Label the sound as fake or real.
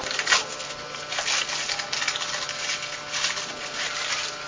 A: real